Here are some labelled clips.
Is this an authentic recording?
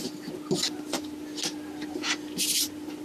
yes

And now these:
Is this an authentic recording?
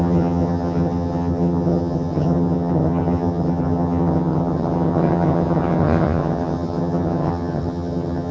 no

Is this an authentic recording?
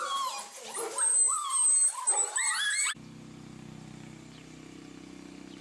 yes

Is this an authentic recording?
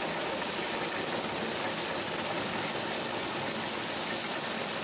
yes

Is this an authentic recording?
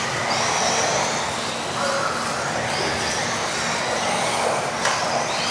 yes